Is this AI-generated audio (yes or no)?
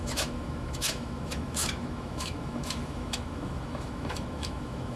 yes